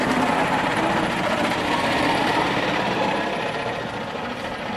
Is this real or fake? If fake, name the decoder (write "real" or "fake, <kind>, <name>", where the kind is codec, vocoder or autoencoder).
fake, vocoder, BigVGAN v2